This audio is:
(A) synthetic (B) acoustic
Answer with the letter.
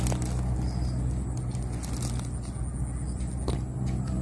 B